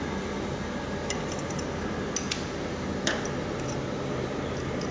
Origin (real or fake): real